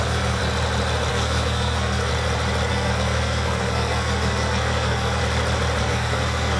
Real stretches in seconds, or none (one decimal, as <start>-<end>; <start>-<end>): 0.4-1.1; 2.1-2.7; 5.2-5.8